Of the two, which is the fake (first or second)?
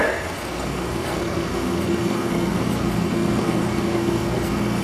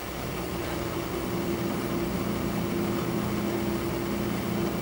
first